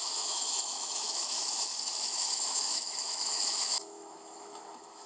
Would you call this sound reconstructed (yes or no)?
yes